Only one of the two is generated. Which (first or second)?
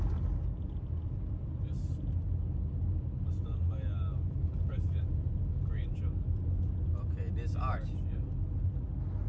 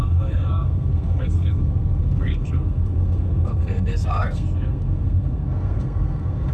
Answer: second